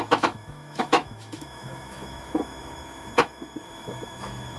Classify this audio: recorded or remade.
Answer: remade